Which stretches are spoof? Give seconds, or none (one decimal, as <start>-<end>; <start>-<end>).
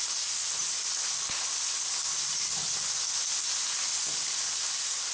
none